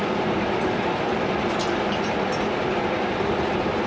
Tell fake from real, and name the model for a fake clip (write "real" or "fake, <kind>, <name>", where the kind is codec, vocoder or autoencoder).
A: real